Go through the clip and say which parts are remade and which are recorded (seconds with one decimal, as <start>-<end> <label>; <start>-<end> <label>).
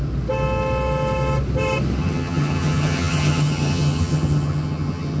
0.0-2.0 recorded; 2.0-5.2 remade